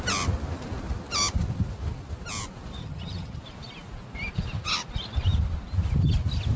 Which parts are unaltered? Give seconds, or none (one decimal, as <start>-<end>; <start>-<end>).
0.0-2.8; 3.4-6.6